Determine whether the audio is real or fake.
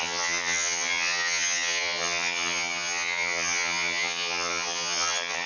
fake